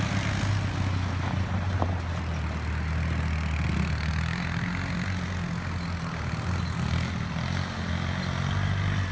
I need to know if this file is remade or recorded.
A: recorded